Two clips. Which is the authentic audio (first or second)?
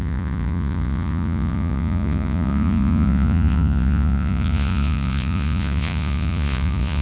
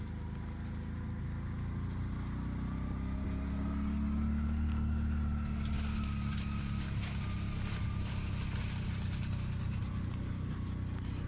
second